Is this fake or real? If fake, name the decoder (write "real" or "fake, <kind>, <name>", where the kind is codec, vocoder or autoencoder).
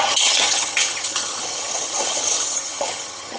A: fake, vocoder, HiFi-GAN